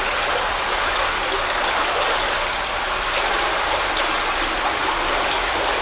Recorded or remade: recorded